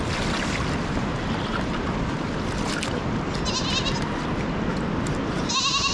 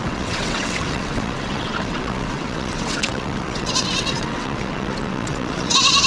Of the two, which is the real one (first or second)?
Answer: first